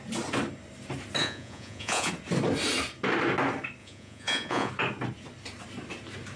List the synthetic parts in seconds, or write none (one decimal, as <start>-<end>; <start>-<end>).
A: 1.2-2.1; 3.8-4.7